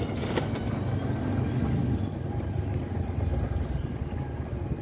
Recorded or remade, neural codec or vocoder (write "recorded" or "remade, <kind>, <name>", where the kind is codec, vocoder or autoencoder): recorded